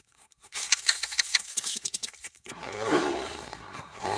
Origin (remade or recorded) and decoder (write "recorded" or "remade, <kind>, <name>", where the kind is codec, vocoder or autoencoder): remade, codec, SNAC